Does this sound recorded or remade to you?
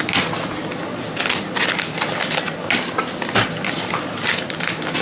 recorded